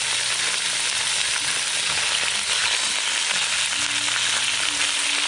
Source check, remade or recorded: recorded